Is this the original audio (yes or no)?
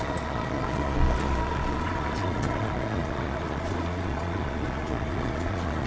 no